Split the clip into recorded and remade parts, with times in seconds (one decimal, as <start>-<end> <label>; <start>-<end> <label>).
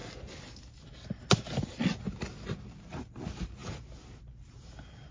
0.0-2.8 recorded; 2.8-3.6 remade; 3.6-4.2 recorded; 4.2-5.1 remade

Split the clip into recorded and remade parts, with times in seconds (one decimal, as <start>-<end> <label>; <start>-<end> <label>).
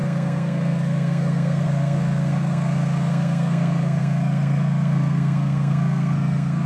0.0-6.7 remade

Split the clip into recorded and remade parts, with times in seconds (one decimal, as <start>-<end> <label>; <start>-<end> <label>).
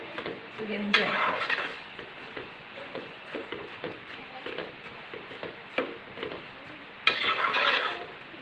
0.0-4.2 remade; 4.2-8.4 recorded